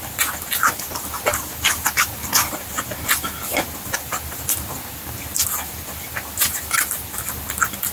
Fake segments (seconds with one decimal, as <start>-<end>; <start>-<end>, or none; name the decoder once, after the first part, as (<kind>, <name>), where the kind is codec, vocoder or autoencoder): none